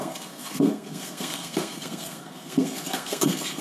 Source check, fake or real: fake